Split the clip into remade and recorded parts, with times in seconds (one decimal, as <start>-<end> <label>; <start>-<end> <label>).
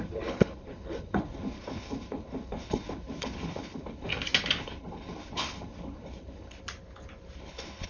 0.0-4.1 remade; 4.1-4.6 recorded; 4.6-6.6 remade; 6.6-7.4 recorded; 7.4-7.9 remade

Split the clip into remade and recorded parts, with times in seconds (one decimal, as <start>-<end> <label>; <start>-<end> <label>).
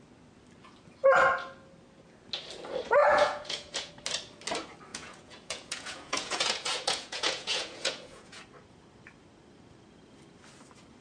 0.0-3.0 recorded; 3.0-3.9 remade; 3.9-4.9 recorded; 4.9-8.4 remade; 8.4-11.0 recorded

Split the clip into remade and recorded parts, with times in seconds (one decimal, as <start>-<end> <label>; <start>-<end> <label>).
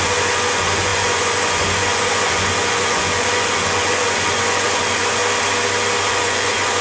0.0-5.2 remade; 5.2-6.1 recorded; 6.1-6.8 remade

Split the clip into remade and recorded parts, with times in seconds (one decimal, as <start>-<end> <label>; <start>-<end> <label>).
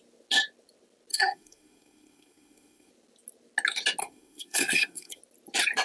0.0-1.1 recorded; 1.1-2.9 remade; 2.9-4.0 recorded; 4.0-5.2 remade; 5.2-5.8 recorded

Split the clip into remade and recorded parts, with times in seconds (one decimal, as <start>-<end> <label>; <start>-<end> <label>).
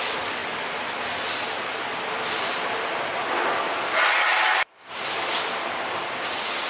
0.0-4.3 recorded; 4.3-6.7 remade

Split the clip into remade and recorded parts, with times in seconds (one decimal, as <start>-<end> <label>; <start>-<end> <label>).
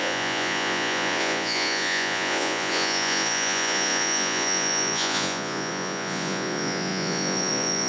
0.0-7.9 remade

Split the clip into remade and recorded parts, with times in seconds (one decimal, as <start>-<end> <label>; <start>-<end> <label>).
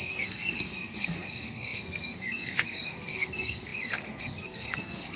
0.0-5.2 remade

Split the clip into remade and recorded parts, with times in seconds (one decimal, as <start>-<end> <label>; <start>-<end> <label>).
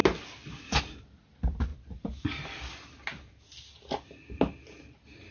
0.0-5.3 recorded